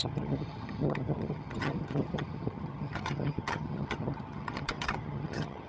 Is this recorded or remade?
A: remade